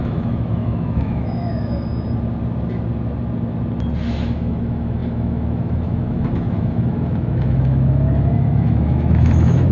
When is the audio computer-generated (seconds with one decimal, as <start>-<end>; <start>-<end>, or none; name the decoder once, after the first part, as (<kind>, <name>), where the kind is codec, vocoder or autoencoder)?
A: 0.0-1.9 (autoencoder, DAC-VAE); 4.1-9.7